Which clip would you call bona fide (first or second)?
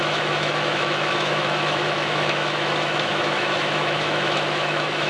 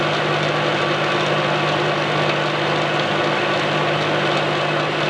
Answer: second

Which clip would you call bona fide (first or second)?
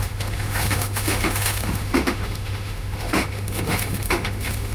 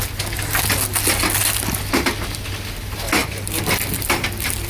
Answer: second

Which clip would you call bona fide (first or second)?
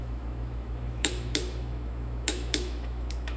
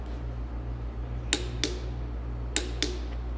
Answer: second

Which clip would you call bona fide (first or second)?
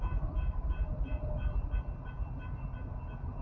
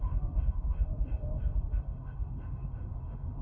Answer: first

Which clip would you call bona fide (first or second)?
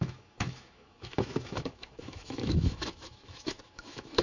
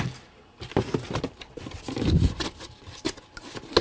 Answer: second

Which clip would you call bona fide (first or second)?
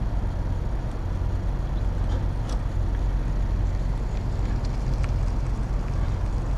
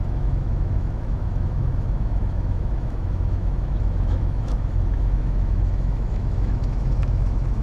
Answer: first